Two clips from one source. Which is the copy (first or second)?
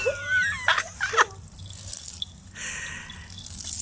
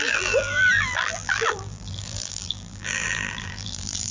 second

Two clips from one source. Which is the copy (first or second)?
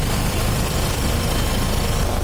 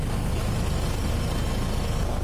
first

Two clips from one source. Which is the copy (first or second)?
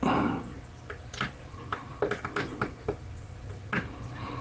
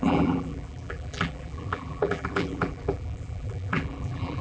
second